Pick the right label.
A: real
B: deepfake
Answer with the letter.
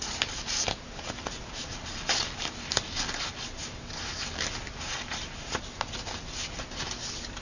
A